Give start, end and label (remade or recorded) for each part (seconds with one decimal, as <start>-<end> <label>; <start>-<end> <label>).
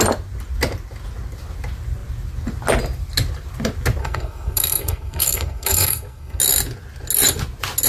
0.0-4.0 recorded; 4.0-6.4 remade; 6.4-7.9 recorded